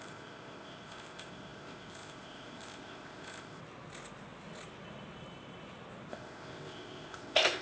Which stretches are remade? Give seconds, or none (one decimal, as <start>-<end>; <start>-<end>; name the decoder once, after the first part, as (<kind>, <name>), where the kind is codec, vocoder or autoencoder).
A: 0.0-3.6 (codec, ZipCodec); 6.1-7.6